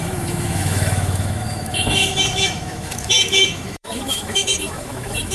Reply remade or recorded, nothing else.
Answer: remade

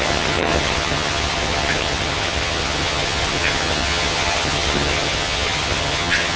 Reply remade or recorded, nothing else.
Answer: remade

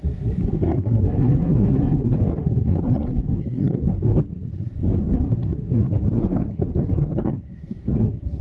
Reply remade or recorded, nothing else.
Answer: remade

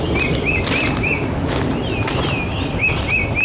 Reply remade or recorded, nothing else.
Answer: recorded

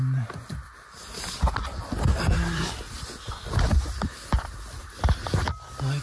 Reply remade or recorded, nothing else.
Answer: recorded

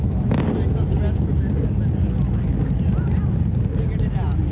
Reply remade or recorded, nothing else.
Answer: recorded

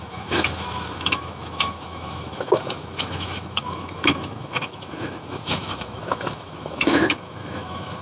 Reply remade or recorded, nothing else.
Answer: remade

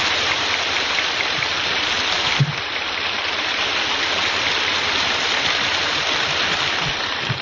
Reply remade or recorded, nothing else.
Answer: recorded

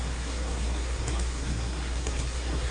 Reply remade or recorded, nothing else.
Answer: remade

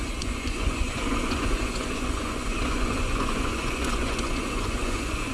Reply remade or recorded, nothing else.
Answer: remade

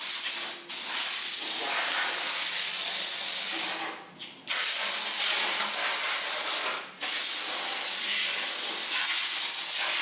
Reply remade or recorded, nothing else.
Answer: recorded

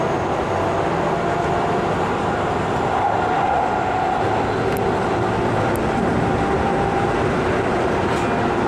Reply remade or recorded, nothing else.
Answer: recorded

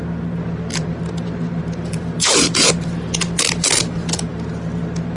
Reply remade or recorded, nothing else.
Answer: recorded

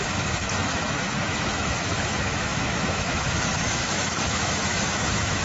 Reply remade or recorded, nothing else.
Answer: remade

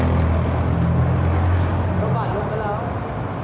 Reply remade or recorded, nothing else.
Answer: recorded